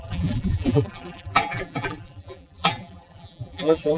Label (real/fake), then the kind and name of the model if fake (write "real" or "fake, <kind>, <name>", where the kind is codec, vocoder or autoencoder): fake, vocoder, BigVGAN v2